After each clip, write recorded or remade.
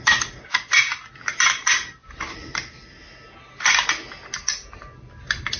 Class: recorded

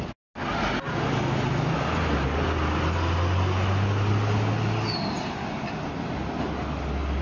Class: recorded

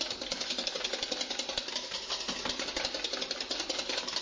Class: recorded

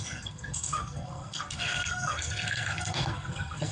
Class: remade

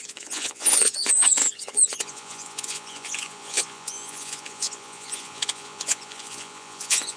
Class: remade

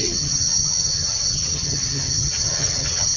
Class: remade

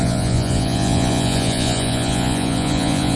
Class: remade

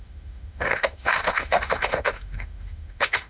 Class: remade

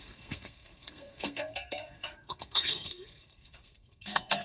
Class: remade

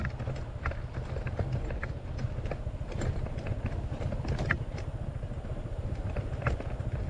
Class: recorded